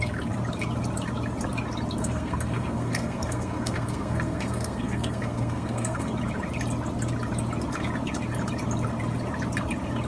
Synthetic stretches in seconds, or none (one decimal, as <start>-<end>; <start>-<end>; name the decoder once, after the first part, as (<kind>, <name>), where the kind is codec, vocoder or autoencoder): 2.0-6.1 (codec, SNAC)